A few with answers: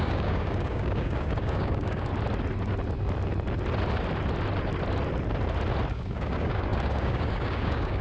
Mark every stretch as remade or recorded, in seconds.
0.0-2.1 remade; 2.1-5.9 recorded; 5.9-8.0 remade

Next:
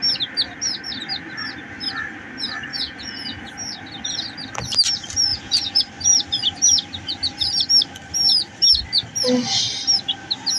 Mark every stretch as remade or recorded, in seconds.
0.0-2.7 recorded; 2.7-3.4 remade; 3.4-5.3 recorded; 5.3-5.8 remade; 5.8-10.6 recorded